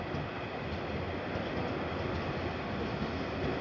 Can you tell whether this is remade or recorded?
recorded